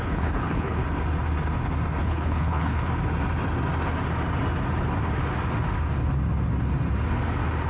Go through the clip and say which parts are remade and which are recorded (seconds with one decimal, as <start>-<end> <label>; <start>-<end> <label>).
0.0-0.8 remade; 0.8-2.0 recorded; 2.0-2.9 remade; 2.9-7.7 recorded